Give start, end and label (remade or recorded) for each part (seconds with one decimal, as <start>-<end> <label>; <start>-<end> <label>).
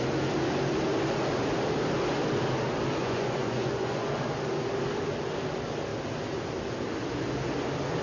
0.0-3.0 recorded; 3.0-4.2 remade; 4.2-8.0 recorded